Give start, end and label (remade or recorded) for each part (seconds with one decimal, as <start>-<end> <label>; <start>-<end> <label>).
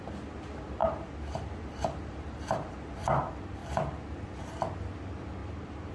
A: 0.0-0.8 recorded; 0.8-3.0 remade; 3.0-3.6 recorded; 3.6-4.5 remade; 4.5-5.4 recorded; 5.4-5.9 remade